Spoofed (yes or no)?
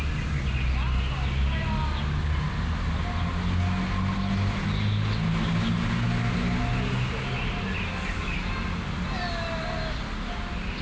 no